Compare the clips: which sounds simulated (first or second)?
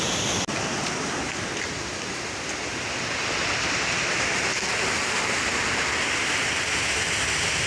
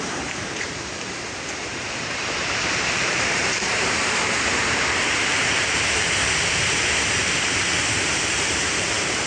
second